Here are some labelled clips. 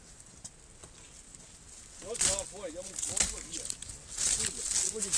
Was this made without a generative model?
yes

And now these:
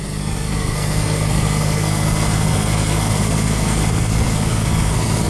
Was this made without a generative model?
no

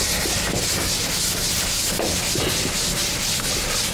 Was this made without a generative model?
yes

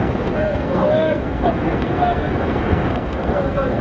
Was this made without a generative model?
no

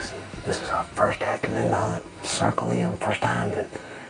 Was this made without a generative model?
no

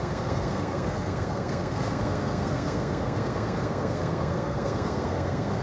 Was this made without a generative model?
no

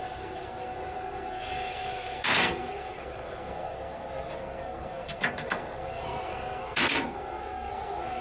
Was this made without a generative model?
no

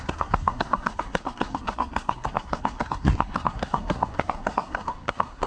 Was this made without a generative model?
no